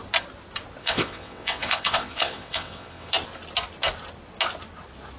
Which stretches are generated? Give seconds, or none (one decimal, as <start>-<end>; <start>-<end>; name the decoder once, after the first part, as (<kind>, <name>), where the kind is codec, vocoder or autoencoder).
0.8-3.1 (vocoder, WaveNeXt)